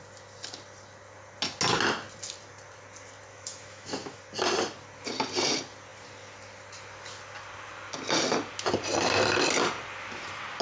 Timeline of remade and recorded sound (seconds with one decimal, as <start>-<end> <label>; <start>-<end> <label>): 0.0-3.3 recorded; 3.3-4.2 remade; 4.2-10.6 recorded